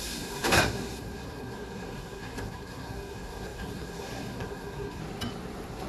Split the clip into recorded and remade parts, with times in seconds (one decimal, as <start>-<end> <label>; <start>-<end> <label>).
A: 0.0-5.0 remade; 5.0-5.9 recorded